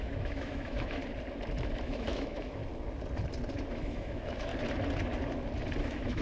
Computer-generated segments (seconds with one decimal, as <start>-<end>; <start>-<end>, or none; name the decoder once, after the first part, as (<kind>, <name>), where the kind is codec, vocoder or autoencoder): 0.0-1.0 (autoencoder, DAC-VAE); 1.6-2.6; 3.7-4.5; 5.8-6.2